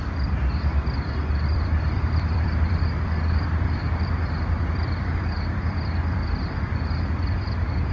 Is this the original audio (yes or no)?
no